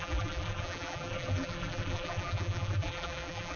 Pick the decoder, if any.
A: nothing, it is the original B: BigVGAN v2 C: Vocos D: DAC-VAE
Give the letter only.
B